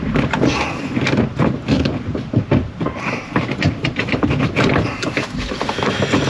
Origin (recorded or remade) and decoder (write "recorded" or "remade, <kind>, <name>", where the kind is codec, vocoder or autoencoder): recorded